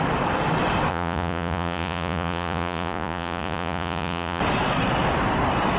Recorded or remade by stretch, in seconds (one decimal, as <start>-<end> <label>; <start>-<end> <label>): 0.0-0.9 recorded; 0.9-4.4 remade; 4.4-5.8 recorded